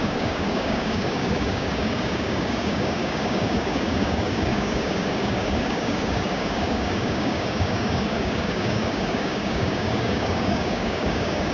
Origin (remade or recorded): remade